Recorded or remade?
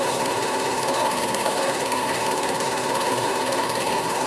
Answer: remade